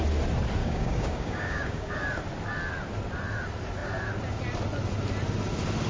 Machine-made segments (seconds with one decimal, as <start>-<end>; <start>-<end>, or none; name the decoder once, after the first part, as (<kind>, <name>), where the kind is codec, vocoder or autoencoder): 0.6-1.9 (codec, DAC)